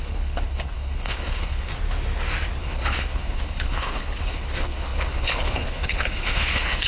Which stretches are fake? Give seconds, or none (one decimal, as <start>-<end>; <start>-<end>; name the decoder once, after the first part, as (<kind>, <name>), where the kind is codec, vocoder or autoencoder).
0.0-1.7 (codec, HILCodec); 2.6-6.9